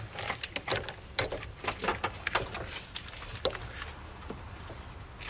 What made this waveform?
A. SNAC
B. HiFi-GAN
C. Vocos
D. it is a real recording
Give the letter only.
D